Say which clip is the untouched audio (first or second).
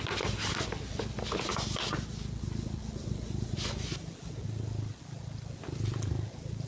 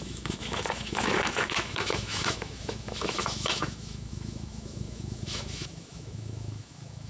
first